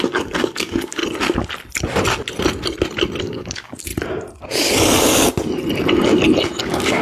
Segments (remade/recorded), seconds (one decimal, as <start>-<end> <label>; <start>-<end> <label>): 0.0-1.0 remade; 1.0-3.2 recorded; 3.2-3.9 remade; 3.9-6.6 recorded; 6.6-7.0 remade